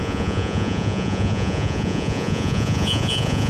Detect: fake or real fake